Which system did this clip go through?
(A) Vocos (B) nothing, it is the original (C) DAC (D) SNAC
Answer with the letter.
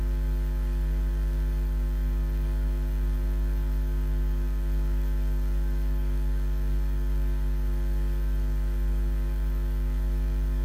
C